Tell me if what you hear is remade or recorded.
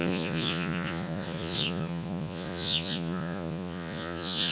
remade